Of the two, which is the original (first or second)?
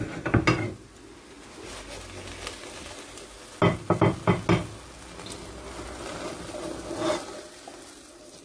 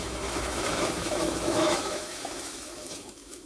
first